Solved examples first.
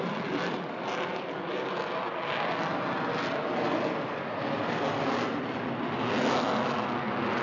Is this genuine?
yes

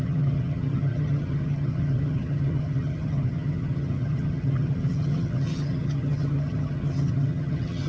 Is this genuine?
no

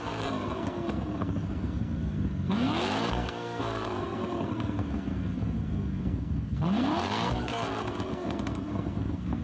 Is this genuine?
no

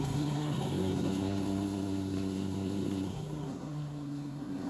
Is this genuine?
no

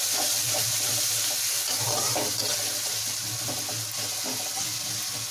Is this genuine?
yes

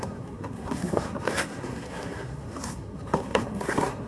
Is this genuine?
no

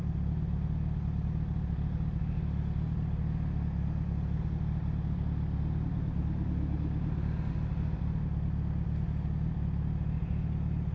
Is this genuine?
yes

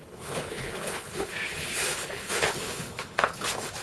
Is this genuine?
no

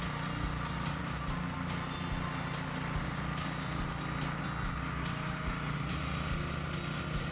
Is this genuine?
yes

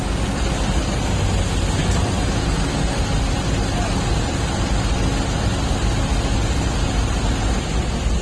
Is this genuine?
yes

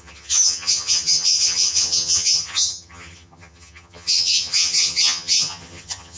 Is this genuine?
no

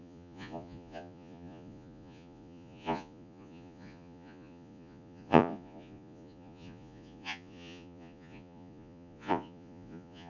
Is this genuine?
no